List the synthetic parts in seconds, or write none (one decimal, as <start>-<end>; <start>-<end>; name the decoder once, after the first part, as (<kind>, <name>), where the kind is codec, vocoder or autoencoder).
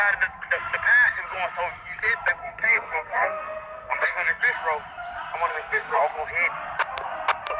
2.4-4.4 (codec, SNAC); 5.5-6.0